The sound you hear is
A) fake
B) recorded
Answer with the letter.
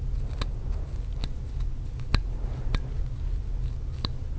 B